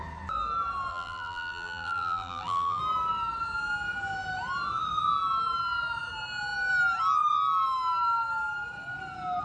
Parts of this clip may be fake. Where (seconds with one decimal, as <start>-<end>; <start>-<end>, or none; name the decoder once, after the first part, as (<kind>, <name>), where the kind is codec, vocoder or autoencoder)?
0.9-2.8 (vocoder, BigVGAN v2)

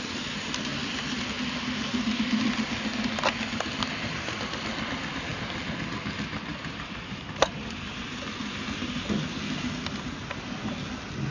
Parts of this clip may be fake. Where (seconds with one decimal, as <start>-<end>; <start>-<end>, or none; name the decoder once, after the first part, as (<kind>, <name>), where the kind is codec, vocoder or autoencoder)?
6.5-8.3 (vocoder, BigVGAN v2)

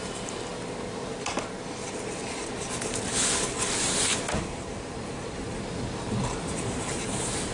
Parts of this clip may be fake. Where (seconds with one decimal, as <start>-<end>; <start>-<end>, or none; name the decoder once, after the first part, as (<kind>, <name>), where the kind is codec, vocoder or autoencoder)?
0.0-0.5 (vocoder, BigVGAN v2); 3.7-7.5

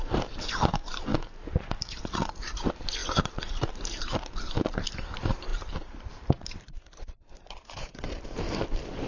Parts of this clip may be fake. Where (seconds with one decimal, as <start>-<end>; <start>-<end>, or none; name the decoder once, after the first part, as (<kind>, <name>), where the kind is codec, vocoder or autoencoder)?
0.0-1.1 (vocoder, BigVGAN v2); 2.4-9.1